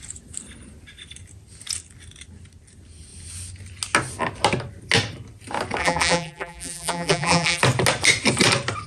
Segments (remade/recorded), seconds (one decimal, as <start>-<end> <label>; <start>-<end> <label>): 0.0-5.8 recorded; 5.8-7.6 remade; 7.6-8.9 recorded